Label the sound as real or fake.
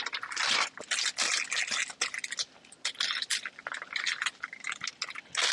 real